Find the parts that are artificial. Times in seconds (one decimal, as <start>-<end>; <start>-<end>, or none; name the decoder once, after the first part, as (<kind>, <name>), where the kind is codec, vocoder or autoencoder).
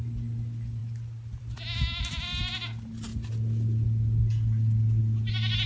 none